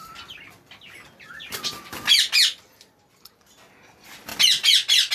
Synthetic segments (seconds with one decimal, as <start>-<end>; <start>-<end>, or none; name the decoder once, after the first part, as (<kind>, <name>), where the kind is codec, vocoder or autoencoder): none